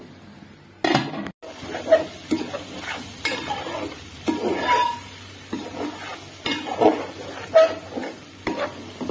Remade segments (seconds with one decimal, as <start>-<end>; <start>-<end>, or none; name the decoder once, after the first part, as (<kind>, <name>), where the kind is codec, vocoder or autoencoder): none